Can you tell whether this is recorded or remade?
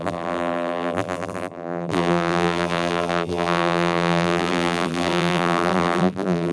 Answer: remade